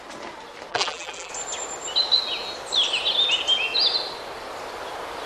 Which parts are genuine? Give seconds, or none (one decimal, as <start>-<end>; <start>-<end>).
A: 0.0-0.7; 1.3-5.3